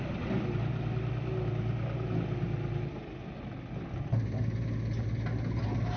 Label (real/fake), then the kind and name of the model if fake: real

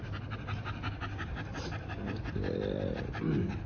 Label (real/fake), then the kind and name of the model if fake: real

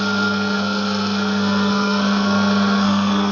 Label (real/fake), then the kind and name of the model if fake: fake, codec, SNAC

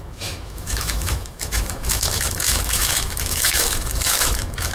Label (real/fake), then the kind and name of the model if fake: fake, autoencoder, DAC-VAE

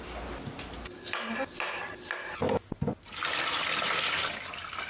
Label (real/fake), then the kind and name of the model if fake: real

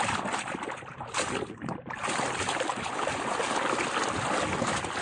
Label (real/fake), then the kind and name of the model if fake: real